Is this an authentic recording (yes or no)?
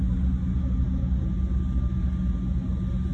yes